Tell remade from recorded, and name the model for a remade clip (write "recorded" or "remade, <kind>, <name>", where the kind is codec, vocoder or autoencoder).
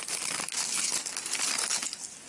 recorded